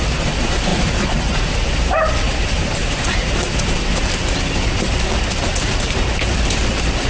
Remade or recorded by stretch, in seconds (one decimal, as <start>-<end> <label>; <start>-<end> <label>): 0.0-7.1 recorded